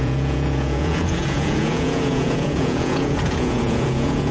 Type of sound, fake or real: fake